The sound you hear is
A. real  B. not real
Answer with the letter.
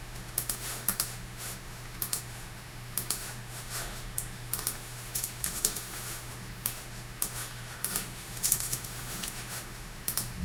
B